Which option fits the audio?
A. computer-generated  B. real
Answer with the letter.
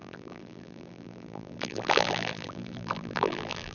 A